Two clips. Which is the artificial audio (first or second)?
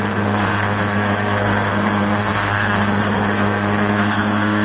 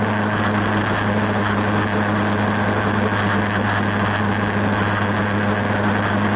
first